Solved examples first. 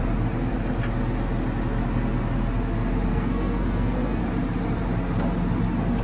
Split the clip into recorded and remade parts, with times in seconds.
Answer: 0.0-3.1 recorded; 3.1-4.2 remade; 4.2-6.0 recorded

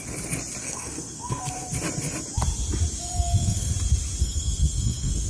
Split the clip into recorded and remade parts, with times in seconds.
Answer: 0.0-0.6 recorded; 0.6-1.7 remade; 1.7-3.0 recorded; 3.0-3.7 remade; 3.7-4.2 recorded; 4.2-5.3 remade

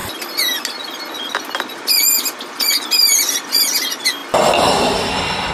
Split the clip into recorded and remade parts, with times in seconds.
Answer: 0.0-5.5 recorded

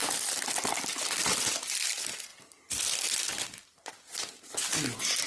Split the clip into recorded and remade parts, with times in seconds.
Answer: 0.0-5.3 recorded